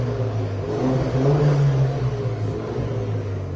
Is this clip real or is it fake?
fake